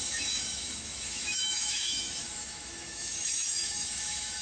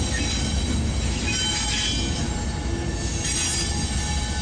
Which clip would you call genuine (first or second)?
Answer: second